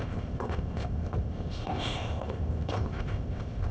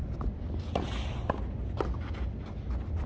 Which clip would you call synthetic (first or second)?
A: first